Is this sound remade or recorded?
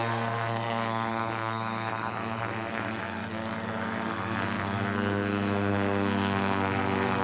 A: remade